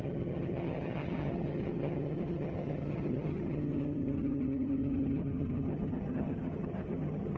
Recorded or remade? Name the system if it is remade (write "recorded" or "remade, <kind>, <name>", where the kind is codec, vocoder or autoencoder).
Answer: remade, vocoder, HiFi-GAN